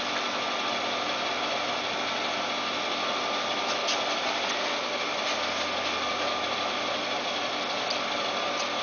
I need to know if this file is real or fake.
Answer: real